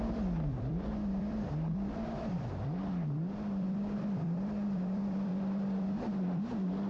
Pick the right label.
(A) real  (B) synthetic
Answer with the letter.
B